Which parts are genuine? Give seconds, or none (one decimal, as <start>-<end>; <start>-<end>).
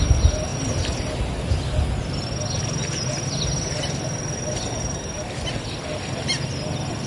0.0-7.1